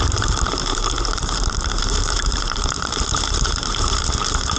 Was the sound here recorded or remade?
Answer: remade